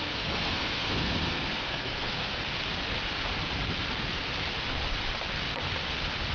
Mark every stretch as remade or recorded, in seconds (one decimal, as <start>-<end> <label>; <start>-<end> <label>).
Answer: 0.0-2.4 remade; 2.4-6.3 recorded